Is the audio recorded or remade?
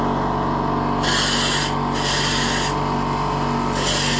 recorded